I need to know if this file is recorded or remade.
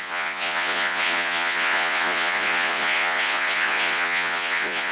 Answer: remade